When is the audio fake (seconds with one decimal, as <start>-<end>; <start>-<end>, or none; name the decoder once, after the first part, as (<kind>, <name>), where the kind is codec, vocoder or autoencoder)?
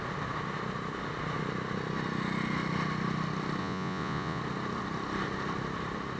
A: 3.6-4.4 (vocoder, Vocos)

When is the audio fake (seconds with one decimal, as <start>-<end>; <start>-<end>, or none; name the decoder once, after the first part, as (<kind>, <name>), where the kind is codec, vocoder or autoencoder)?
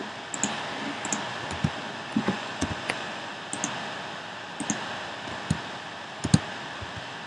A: 2.1-3.3 (vocoder, Vocos)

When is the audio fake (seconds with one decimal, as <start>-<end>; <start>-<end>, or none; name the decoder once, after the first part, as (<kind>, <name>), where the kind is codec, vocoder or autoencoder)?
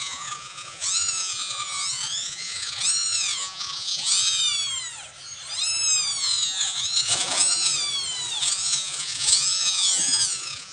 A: 0.0-4.4 (vocoder, Vocos); 6.2-7.7; 8.4-10.7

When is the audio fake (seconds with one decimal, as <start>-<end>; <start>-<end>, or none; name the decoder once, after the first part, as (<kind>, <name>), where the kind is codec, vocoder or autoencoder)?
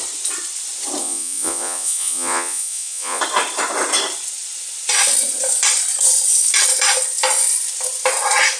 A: 1.0-3.2 (vocoder, Vocos)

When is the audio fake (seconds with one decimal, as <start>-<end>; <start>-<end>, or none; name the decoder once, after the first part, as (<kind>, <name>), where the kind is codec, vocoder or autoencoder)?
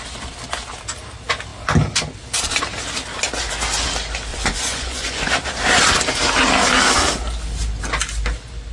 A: 4.3-5.3 (vocoder, Vocos)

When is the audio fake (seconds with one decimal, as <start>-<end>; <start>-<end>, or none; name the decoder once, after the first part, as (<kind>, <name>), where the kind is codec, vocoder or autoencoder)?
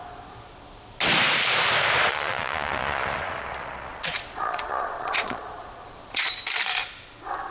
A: 2.1-6.3 (vocoder, Vocos)